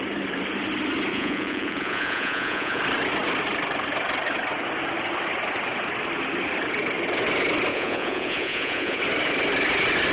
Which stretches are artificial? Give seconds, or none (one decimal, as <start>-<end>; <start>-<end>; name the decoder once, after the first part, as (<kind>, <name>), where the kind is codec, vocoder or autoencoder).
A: 1.1-2.8 (vocoder, Vocos); 7.7-9.0